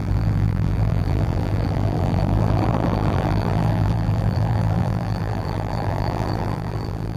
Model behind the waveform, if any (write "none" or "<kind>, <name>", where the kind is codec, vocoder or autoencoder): vocoder, BigVGAN v2